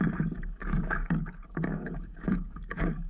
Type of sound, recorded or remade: remade